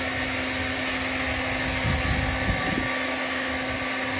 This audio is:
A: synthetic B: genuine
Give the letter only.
B